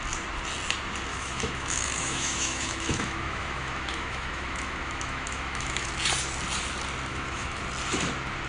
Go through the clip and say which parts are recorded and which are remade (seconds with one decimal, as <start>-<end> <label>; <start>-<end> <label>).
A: 0.0-1.1 recorded; 1.1-5.9 remade; 5.9-7.1 recorded; 7.1-7.6 remade; 7.6-8.5 recorded